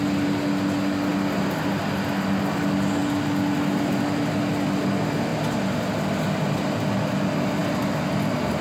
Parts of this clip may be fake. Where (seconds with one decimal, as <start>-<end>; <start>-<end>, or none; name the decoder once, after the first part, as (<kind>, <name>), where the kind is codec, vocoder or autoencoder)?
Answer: none